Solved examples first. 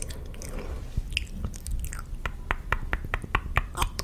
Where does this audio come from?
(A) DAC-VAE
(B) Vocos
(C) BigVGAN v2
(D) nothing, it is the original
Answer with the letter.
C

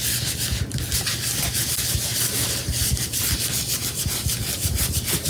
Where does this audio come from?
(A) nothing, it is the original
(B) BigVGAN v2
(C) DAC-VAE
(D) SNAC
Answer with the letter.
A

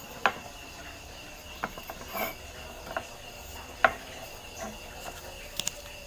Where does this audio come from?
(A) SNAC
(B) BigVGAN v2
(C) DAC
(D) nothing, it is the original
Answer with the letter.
D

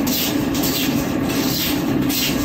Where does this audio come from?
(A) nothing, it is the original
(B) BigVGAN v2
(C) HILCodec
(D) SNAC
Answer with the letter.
B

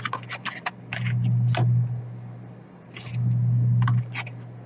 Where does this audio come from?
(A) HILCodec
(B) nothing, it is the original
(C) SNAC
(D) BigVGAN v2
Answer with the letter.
B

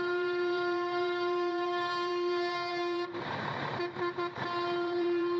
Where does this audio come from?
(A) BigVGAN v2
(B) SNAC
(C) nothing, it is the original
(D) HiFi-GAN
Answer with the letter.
A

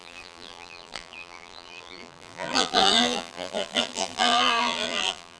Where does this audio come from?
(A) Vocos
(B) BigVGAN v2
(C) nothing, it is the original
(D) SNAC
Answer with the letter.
B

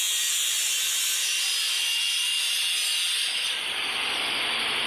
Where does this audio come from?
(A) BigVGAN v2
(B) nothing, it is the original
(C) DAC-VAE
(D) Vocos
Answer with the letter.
B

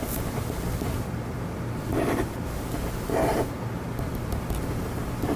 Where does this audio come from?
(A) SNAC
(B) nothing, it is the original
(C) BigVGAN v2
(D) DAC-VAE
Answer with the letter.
B